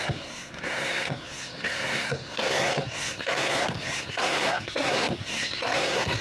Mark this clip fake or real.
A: fake